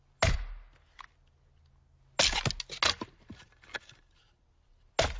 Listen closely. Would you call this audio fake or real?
real